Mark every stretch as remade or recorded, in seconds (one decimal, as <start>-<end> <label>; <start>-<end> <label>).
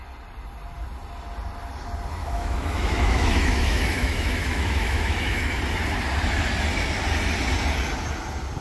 0.0-2.2 recorded; 2.2-5.6 remade; 5.6-8.6 recorded